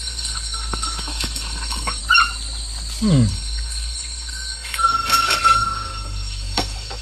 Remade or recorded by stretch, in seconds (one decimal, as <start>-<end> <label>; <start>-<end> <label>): 0.0-2.0 remade; 2.0-3.3 recorded; 3.3-7.0 remade